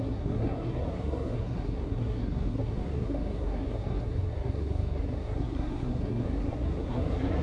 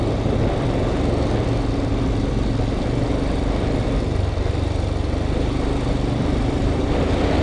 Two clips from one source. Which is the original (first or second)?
second